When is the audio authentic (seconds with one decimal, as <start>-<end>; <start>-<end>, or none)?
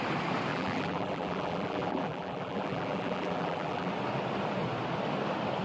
0.0-0.5; 3.9-5.6